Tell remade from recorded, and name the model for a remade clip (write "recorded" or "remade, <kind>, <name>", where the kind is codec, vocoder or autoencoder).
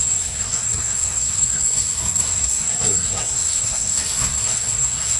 remade, codec, SNAC